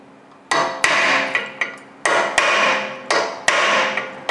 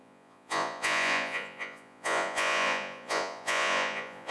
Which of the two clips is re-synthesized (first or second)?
second